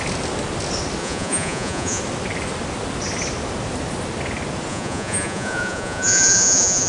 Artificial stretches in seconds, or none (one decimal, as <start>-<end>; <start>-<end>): 1.0-2.0; 4.7-6.9